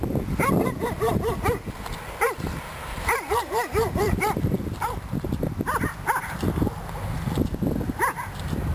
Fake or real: fake